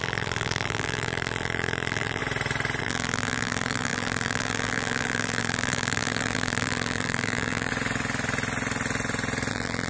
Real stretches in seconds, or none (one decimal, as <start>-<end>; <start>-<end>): 2.2-2.8; 7.7-9.5